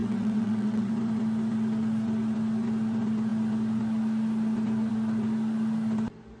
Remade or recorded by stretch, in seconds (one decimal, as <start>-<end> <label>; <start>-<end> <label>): 0.0-0.9 remade; 0.9-6.4 recorded